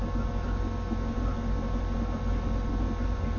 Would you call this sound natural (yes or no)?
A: yes